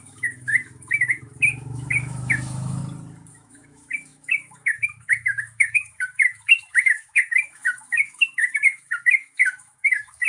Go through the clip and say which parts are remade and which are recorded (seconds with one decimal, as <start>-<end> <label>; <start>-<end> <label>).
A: 0.0-2.8 remade; 2.8-3.3 recorded; 3.3-10.3 remade